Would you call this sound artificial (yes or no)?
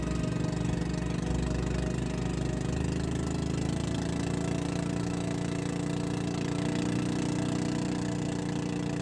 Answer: no